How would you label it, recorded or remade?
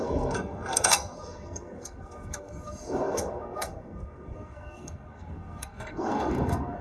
remade